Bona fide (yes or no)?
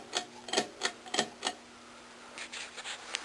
yes